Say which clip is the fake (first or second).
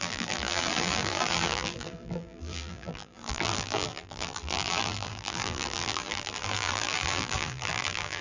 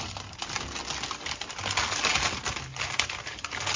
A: first